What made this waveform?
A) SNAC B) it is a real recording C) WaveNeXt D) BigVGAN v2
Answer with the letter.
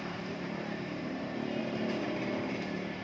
D